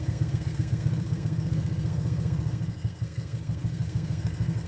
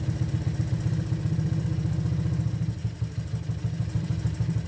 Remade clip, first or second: first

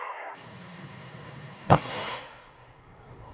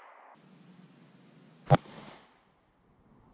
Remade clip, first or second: first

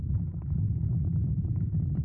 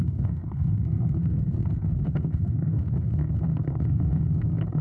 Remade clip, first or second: second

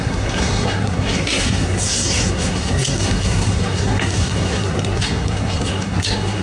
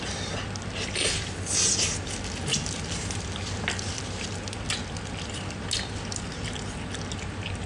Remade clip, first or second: first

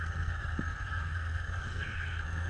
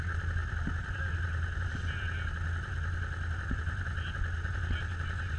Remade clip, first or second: first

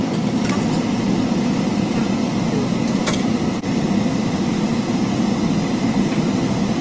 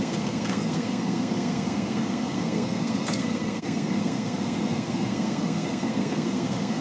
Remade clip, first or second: second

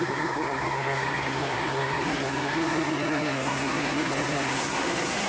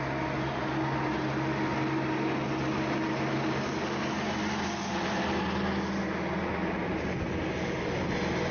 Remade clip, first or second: first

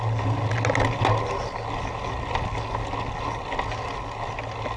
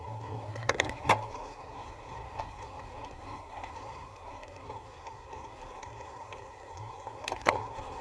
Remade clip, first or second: second